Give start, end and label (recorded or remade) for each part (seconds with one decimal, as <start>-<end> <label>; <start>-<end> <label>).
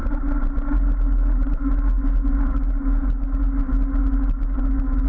0.0-5.1 recorded